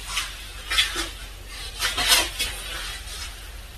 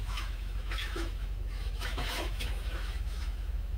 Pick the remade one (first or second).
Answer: second